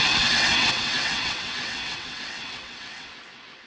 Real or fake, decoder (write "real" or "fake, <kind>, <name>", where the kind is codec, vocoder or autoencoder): fake, vocoder, WaveNeXt